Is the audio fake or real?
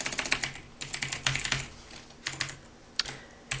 real